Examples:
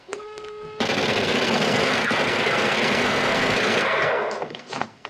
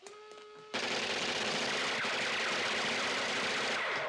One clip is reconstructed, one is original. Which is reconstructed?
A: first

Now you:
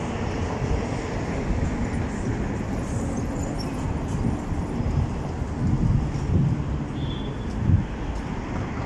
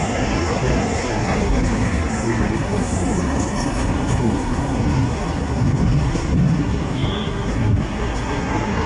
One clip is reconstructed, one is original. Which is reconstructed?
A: second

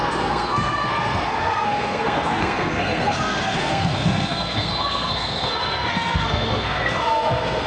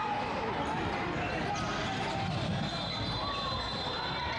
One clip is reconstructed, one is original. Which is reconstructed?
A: first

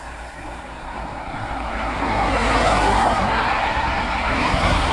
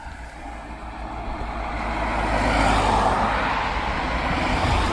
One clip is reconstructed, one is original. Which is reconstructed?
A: first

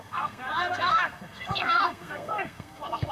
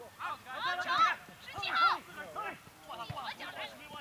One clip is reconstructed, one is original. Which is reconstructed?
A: first